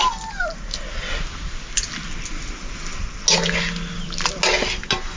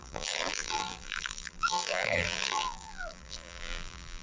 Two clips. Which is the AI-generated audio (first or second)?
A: second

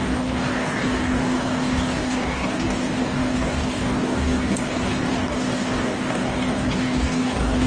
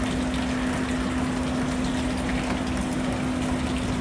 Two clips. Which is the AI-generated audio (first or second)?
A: first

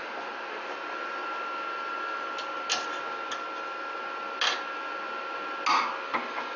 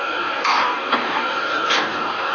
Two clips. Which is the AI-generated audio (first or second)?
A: second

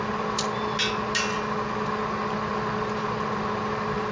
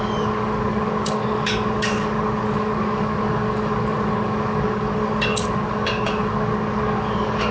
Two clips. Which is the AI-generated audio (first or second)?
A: second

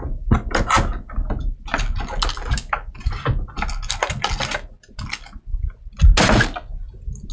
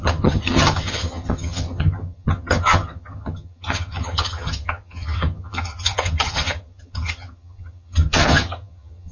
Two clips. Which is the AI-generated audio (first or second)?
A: second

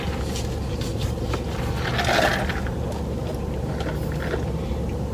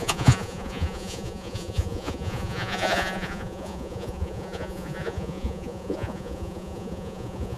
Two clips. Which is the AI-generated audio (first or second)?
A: second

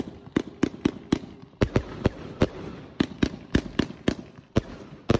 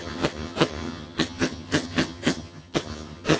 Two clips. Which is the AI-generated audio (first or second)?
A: second